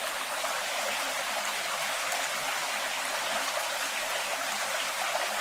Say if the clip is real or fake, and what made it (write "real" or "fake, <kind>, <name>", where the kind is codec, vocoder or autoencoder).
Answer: real